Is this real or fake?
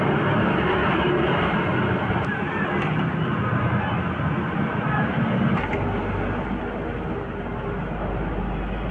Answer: real